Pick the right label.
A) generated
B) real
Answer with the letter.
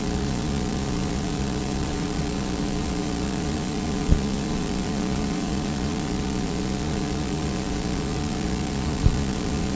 A